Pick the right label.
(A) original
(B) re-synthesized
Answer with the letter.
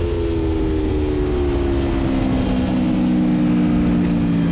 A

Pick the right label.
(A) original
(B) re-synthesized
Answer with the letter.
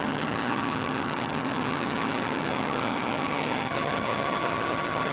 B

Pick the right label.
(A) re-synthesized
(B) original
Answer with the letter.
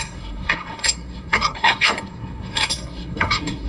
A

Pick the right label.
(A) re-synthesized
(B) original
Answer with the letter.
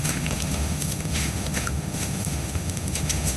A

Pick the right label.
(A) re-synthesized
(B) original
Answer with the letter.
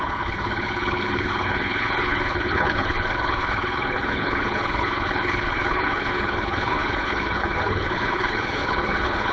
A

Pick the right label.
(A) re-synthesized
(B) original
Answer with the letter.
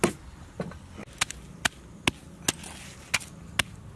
B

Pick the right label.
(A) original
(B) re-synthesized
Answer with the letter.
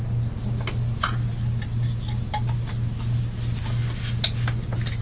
A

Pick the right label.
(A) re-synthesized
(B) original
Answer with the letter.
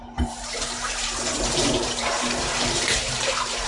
A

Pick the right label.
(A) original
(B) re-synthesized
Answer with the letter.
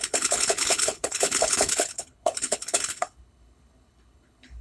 B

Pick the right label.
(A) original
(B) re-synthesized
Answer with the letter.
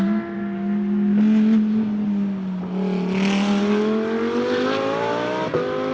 A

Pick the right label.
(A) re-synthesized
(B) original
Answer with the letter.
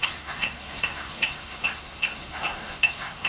A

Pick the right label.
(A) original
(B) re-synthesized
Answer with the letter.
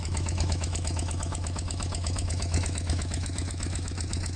B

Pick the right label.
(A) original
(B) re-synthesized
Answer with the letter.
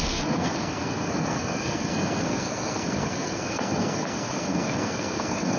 B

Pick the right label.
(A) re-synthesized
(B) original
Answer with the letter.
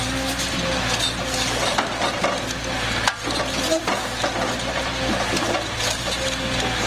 B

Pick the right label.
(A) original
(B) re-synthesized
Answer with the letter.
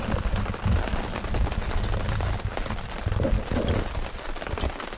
A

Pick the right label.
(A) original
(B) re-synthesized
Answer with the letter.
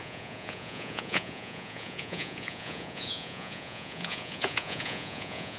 B